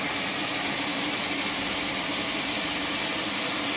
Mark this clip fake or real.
real